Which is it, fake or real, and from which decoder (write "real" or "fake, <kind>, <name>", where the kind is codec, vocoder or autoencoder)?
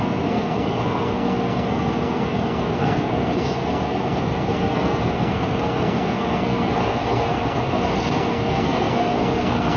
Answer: fake, codec, SNAC